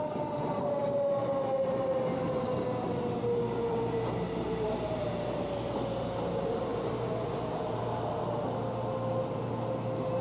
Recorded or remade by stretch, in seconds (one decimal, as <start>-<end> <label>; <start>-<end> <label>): 0.0-6.7 recorded; 6.7-7.8 remade; 7.8-10.2 recorded